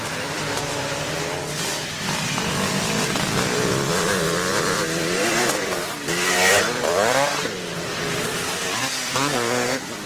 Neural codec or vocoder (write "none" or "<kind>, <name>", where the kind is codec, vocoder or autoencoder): vocoder, BigVGAN v2